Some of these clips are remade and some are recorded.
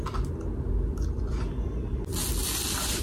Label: recorded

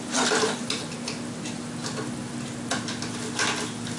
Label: recorded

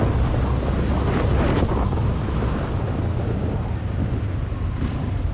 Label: recorded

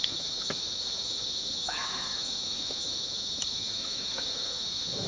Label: remade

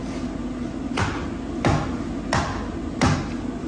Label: recorded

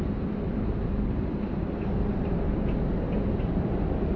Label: remade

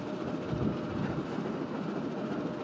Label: recorded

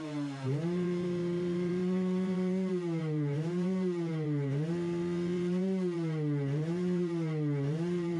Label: remade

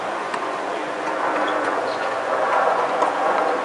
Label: remade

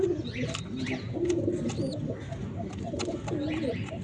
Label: recorded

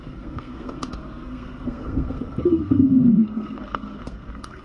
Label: remade